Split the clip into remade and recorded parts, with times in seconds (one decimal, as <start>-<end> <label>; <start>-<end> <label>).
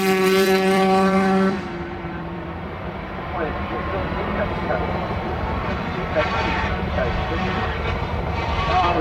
0.0-4.0 remade; 4.0-4.9 recorded; 4.9-9.0 remade